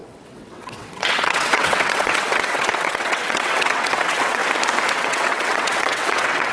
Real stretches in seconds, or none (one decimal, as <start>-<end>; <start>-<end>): 4.4-4.9